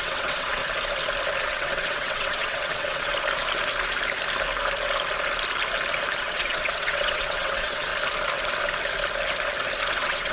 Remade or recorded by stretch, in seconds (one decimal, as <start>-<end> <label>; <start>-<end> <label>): 0.0-0.6 remade; 0.6-1.4 recorded; 1.4-3.1 remade; 3.1-6.2 recorded; 6.2-7.9 remade; 7.9-9.9 recorded; 9.9-10.3 remade